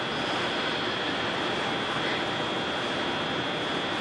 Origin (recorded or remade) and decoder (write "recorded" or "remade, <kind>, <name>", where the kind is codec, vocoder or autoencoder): recorded